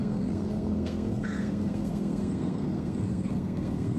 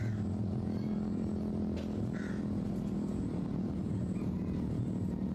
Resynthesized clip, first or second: first